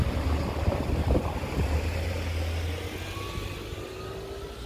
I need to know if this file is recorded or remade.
recorded